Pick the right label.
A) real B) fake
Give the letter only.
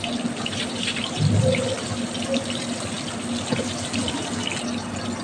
A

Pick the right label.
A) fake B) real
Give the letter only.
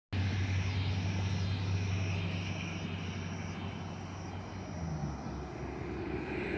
B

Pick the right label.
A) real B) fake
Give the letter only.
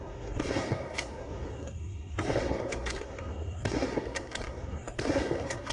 B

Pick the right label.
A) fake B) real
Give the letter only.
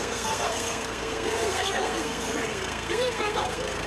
A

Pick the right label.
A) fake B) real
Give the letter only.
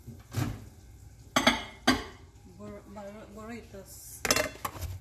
B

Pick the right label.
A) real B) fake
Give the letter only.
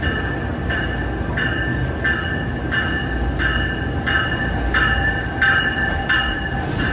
A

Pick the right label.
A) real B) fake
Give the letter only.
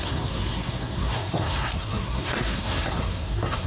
B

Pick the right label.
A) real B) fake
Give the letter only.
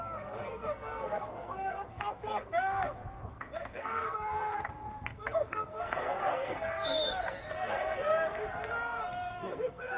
B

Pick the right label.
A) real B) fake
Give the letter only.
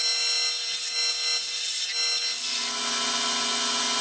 A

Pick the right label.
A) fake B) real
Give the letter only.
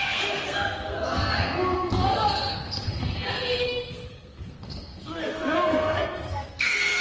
A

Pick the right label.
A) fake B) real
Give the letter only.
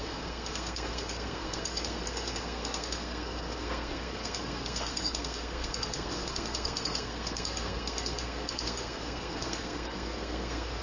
A